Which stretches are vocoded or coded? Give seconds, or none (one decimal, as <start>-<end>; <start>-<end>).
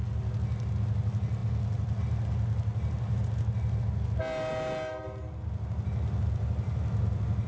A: none